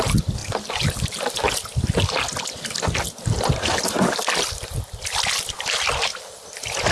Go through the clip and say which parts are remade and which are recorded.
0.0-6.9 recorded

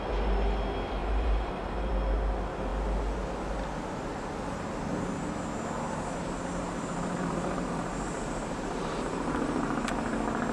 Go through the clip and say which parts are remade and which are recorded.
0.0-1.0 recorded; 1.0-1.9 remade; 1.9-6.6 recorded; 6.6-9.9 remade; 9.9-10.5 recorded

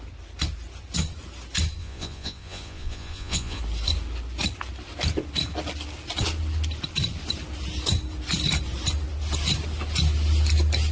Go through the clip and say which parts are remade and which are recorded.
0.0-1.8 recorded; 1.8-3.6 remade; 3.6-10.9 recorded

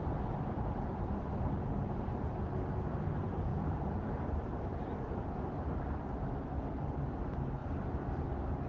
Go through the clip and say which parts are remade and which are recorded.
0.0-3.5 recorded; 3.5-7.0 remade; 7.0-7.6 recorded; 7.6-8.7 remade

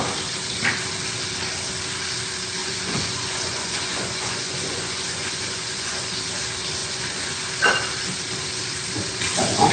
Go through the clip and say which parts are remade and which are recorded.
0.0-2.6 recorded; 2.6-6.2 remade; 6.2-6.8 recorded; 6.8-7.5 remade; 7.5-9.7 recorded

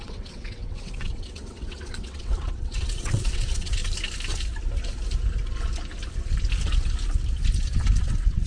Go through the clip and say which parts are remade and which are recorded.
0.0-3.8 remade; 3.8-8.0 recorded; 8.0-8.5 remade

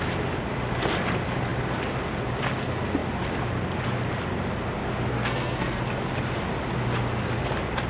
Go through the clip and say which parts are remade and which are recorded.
0.0-5.1 recorded; 5.1-5.8 remade; 5.8-7.9 recorded